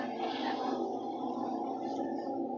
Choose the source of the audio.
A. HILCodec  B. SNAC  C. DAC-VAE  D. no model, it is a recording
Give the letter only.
D